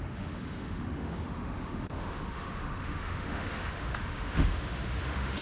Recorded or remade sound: remade